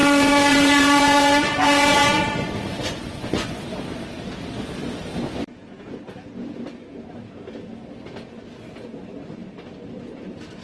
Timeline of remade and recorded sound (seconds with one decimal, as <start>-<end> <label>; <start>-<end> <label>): 0.0-3.6 remade; 3.6-10.6 recorded